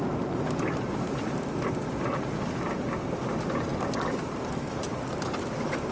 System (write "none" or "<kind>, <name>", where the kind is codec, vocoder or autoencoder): none